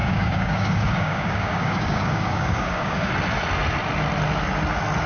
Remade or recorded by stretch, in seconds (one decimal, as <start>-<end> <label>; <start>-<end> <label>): 0.0-3.1 remade; 3.1-5.1 recorded